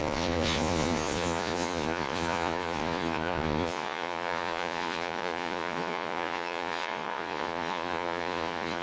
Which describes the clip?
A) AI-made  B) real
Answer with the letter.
A